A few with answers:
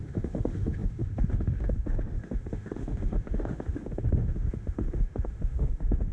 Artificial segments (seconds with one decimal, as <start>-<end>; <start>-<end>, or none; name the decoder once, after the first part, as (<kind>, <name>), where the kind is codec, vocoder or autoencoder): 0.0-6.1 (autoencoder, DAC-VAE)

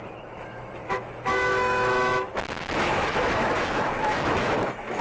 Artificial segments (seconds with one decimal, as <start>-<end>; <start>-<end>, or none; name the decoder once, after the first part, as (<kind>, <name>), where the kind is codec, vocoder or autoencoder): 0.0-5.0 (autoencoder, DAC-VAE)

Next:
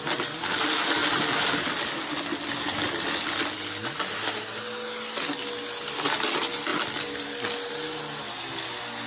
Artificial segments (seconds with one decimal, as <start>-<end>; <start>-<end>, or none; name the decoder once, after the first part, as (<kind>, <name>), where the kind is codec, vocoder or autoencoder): none